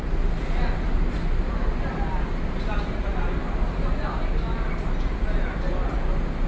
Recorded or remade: recorded